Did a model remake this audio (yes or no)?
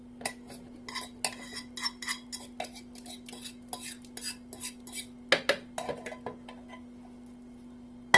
no